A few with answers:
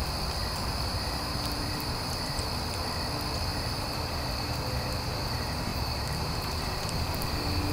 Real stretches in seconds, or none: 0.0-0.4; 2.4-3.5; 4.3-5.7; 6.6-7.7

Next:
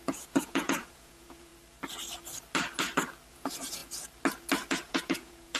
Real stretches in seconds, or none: 1.5-3.3; 3.8-4.7

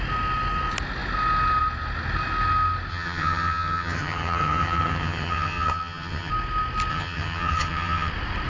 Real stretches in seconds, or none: 0.0-2.9; 6.3-6.9; 8.1-8.5

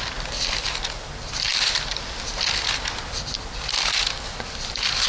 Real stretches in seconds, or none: 0.0-5.1

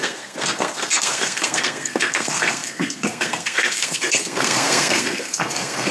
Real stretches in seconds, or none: none

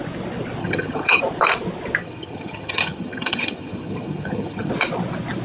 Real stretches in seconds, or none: 0.0-0.6; 1.2-2.0; 4.7-5.4